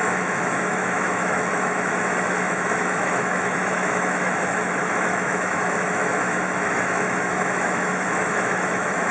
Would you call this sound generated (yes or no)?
yes